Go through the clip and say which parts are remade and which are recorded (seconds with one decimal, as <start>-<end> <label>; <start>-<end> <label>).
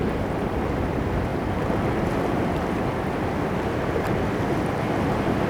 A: 0.0-5.5 recorded